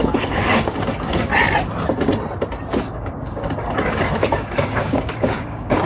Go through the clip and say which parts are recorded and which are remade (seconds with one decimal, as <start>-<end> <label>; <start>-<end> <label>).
0.0-1.3 remade; 1.3-2.8 recorded; 2.8-5.9 remade